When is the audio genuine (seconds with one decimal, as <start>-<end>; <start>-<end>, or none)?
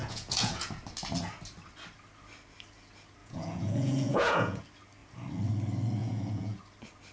0.7-3.2; 4.6-6.0; 6.6-7.1